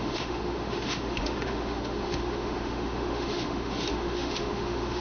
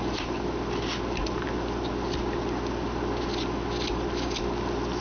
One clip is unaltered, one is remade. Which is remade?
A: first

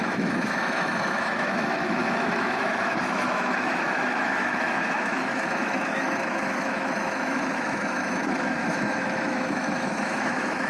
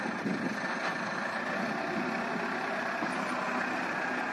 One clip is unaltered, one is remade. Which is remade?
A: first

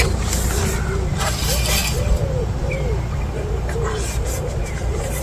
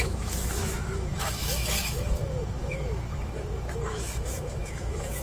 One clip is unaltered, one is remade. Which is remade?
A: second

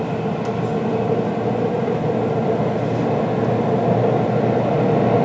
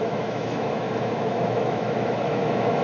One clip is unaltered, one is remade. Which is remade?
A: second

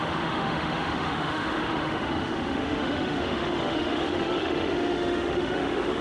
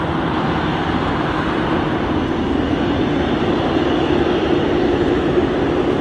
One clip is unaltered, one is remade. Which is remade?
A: first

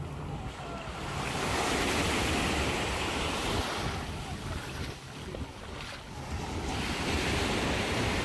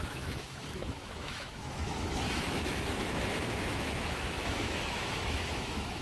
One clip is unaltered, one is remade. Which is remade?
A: second